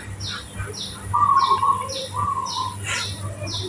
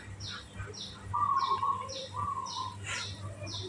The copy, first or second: second